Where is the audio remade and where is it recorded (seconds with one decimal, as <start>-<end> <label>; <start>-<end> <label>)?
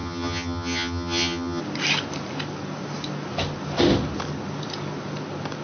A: 0.0-1.6 remade; 1.6-5.6 recorded